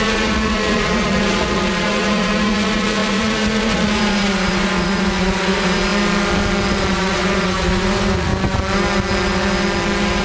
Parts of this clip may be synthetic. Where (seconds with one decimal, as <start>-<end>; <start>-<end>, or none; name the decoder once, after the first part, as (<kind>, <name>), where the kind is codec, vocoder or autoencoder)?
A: 0.0-5.9 (vocoder, Vocos); 6.9-8.3